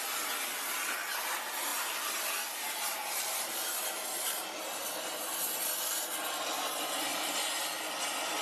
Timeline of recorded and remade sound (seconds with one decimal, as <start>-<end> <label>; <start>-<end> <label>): 0.0-1.7 recorded; 1.7-2.5 remade; 2.5-7.1 recorded; 7.1-8.4 remade